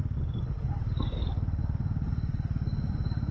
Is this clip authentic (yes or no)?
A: yes